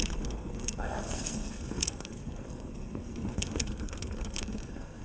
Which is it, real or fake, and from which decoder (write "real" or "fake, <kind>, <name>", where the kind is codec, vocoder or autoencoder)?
fake, codec, SNAC